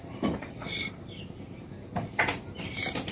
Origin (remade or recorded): remade